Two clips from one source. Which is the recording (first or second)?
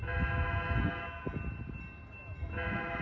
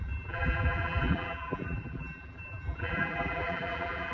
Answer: first